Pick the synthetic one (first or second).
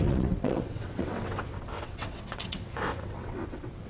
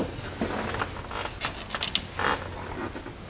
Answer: first